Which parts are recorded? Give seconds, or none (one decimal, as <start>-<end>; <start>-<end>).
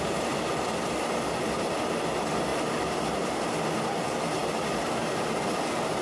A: 0.0-2.5; 3.4-6.0